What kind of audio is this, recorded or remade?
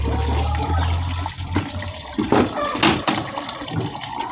recorded